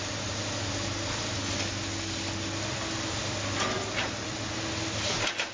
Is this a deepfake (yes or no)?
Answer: no